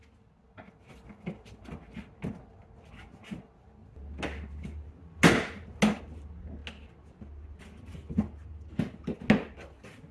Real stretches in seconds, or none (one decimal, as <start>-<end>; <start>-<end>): 0.0-10.1

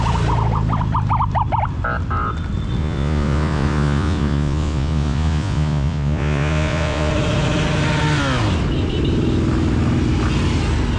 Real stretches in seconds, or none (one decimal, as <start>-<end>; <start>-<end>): 0.0-2.8; 7.1-11.0

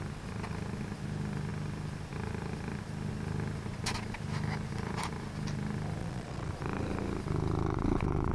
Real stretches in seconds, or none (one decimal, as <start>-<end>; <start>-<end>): 0.0-6.0; 6.5-8.3

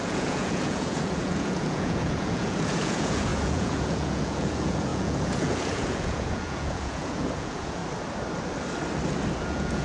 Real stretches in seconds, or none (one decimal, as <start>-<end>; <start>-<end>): 7.8-9.4

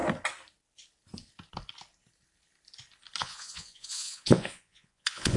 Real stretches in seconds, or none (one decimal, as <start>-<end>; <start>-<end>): 0.0-3.2

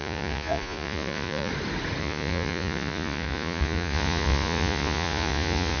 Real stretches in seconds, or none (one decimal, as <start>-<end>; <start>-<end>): 1.5-2.0

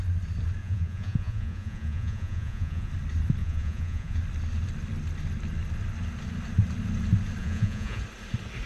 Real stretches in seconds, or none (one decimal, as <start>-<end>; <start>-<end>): 0.0-0.6; 2.9-3.4; 4.2-7.4; 8.0-8.7